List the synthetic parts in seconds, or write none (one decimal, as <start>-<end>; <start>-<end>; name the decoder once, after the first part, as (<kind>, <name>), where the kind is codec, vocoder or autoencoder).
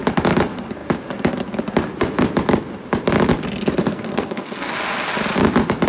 3.8-4.7 (codec, SNAC)